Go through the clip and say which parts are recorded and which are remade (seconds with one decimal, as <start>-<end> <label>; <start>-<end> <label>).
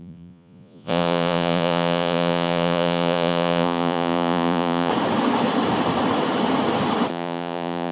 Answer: 0.0-4.9 remade; 4.9-7.1 recorded; 7.1-7.9 remade